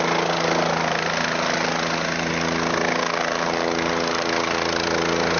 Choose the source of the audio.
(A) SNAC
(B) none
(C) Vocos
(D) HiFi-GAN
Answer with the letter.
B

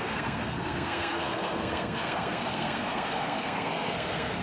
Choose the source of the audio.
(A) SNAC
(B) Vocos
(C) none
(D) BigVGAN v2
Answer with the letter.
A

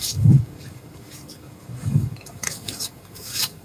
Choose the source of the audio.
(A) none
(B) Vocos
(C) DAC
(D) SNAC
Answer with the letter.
C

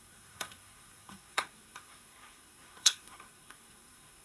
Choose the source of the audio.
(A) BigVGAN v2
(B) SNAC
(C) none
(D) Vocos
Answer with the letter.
B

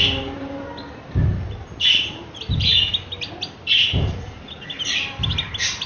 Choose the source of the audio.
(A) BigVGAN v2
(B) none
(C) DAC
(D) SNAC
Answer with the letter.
B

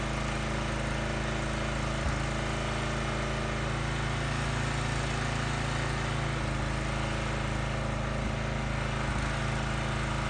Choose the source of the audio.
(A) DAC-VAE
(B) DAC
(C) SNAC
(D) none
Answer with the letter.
D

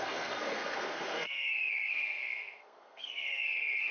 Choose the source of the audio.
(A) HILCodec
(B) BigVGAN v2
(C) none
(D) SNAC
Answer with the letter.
D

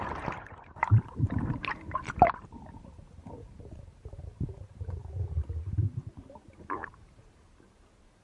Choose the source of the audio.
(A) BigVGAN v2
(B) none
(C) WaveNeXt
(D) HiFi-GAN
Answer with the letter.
A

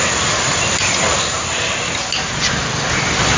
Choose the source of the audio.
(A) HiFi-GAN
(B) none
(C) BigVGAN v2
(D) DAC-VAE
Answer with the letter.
B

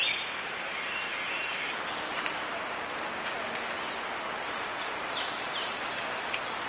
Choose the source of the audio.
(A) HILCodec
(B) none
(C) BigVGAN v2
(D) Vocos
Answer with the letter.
B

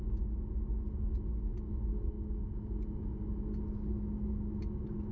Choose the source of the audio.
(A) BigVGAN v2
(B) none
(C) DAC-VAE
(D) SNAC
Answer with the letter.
B